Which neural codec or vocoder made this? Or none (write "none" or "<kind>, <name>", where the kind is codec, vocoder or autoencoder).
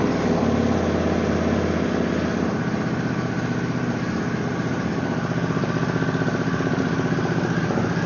none